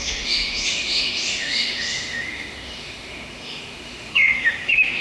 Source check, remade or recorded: remade